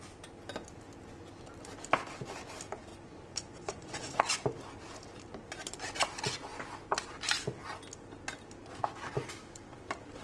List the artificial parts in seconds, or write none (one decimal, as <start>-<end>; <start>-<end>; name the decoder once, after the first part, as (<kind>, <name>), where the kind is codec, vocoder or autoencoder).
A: 2.9-4.2 (vocoder, Vocos)